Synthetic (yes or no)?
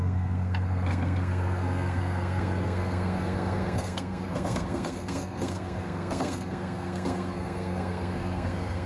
yes